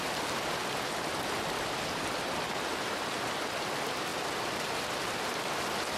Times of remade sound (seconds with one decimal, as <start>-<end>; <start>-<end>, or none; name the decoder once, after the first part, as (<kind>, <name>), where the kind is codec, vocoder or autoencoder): none